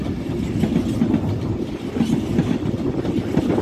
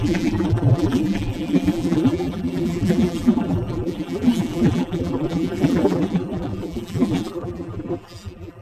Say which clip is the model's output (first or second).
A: second